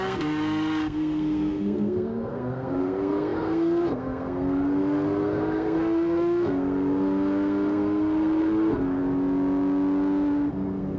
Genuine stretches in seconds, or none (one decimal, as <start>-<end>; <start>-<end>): 9.0-10.5